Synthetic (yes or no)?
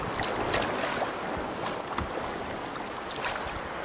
no